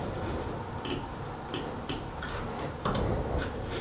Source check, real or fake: real